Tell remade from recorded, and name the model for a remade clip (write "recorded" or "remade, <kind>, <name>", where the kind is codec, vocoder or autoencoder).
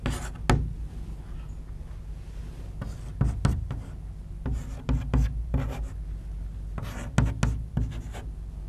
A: recorded